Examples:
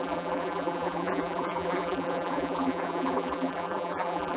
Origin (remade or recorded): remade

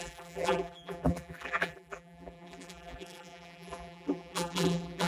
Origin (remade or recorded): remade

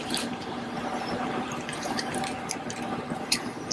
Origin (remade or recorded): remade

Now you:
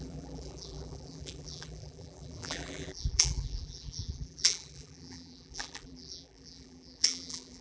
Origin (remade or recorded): remade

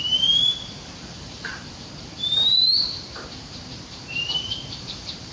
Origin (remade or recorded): remade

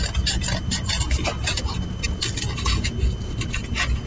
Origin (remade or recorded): recorded